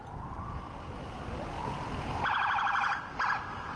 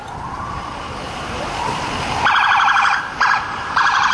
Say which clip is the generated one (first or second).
second